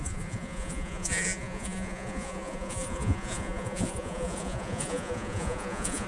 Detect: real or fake fake